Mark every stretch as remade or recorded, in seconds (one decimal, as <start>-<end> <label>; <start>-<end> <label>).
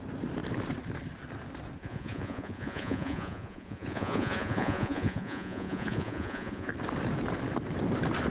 0.0-1.8 recorded; 1.8-6.7 remade; 6.7-8.3 recorded